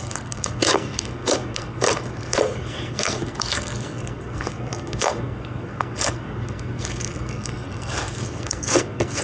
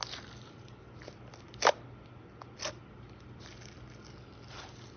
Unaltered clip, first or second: second